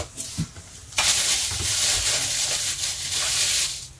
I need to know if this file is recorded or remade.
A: recorded